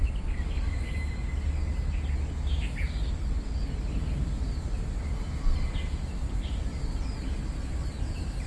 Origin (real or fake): real